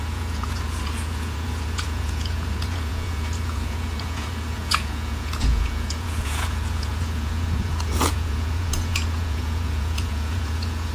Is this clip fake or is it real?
fake